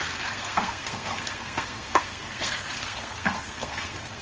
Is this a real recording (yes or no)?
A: no